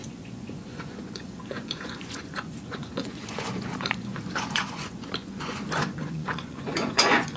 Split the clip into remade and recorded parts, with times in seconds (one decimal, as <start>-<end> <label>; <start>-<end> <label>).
0.0-7.4 remade